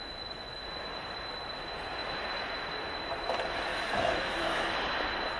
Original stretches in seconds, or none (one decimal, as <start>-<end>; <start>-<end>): 0.0-3.7; 4.7-5.4